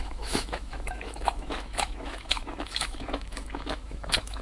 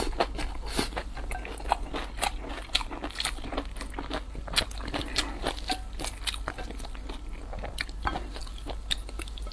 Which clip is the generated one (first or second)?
first